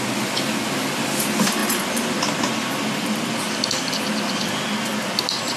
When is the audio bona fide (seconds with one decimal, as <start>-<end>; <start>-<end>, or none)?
0.0-4.9